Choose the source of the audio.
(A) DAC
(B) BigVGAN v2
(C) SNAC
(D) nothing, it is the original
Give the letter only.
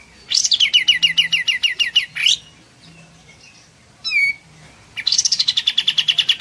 D